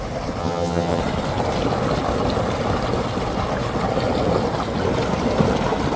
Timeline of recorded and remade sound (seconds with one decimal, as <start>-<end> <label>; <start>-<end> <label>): 0.0-0.4 recorded; 0.4-1.0 remade; 1.0-6.0 recorded